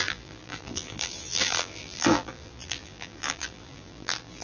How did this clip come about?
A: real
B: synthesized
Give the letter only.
B